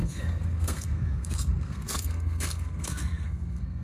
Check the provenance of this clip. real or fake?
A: fake